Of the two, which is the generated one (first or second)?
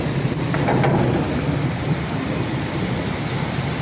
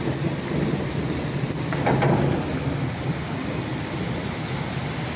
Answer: first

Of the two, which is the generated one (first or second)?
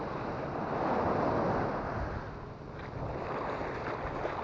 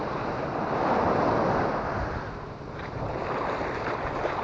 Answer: second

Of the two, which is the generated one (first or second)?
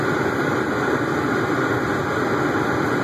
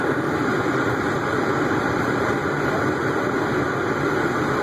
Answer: second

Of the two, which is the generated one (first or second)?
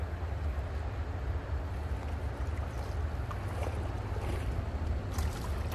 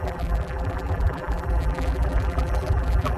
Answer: second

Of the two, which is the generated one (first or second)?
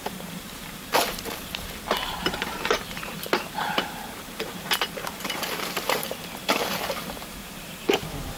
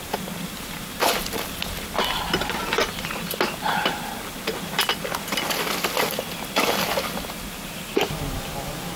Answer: first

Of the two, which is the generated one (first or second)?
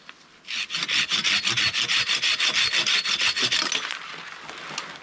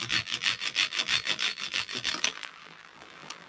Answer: second